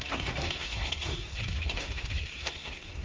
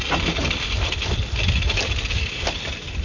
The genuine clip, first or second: second